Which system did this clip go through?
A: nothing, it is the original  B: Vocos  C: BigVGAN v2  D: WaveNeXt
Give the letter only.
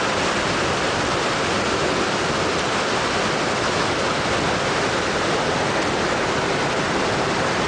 A